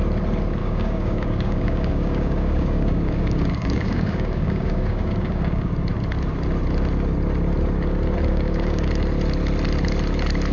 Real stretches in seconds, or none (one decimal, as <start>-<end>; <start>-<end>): 0.0-0.6; 5.7-8.3; 8.9-10.5